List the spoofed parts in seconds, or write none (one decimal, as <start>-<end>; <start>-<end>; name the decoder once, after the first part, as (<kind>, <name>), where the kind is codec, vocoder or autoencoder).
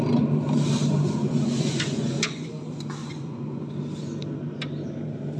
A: 1.2-2.6 (vocoder, Vocos); 3.0-3.6